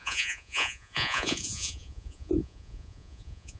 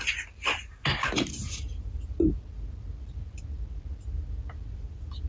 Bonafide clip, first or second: second